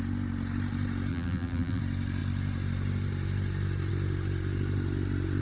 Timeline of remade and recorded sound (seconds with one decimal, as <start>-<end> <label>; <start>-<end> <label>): 0.0-1.1 recorded; 1.1-1.8 remade; 1.8-5.4 recorded